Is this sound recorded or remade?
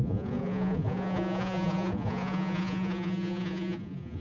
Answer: remade